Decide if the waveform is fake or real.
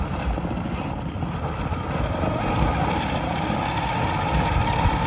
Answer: real